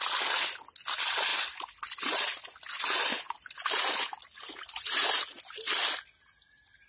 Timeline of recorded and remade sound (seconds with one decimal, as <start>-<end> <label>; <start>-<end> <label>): 0.0-6.9 recorded